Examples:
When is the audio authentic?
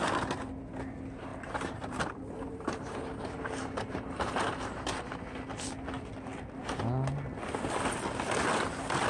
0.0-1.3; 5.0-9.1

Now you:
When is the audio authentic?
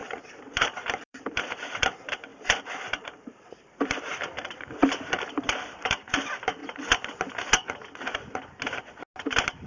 6.6-9.7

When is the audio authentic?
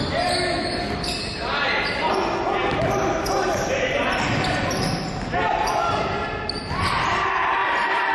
0.0-7.6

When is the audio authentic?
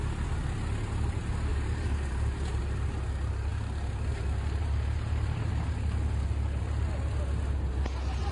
0.0-1.5; 2.6-4.6; 5.5-8.3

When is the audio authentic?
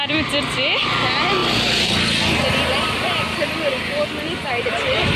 0.0-5.2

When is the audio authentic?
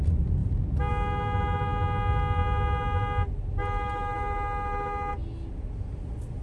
0.0-6.4